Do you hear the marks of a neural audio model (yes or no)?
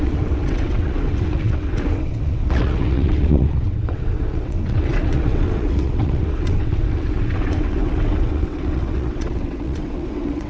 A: yes